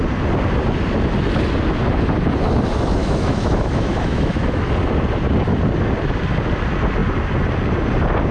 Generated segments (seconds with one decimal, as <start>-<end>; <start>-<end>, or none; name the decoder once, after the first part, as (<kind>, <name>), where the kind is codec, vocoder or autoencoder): 3.0-4.7 (autoencoder, DAC-VAE)